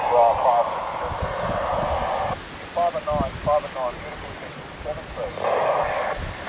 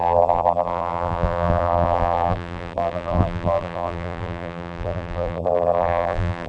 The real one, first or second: first